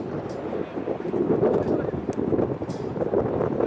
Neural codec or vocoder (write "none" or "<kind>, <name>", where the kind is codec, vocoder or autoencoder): none